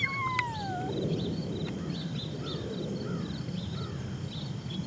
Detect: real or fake real